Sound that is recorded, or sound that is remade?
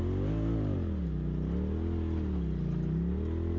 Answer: recorded